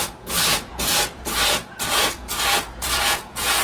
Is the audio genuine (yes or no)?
no